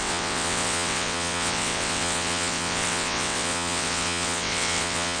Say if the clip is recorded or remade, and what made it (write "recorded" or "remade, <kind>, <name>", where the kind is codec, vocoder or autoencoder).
remade, vocoder, WaveNeXt